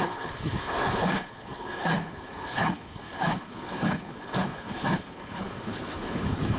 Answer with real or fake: fake